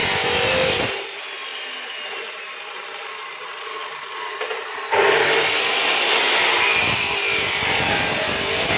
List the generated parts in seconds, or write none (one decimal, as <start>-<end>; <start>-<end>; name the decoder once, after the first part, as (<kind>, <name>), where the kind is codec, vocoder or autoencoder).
none